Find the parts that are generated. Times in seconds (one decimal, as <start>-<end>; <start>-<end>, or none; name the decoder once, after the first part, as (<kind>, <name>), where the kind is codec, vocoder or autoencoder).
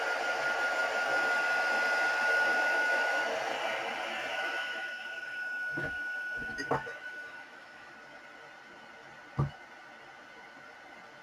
2.5-3.2 (autoencoder, DAC-VAE); 4.3-7.9